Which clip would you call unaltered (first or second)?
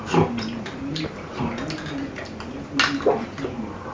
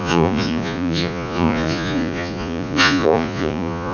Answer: first